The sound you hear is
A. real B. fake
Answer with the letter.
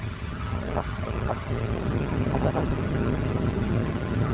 B